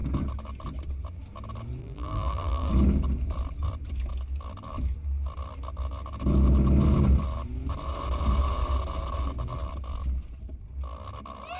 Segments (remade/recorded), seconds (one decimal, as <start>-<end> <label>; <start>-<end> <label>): 0.0-1.8 recorded; 1.8-2.7 remade; 2.7-11.6 recorded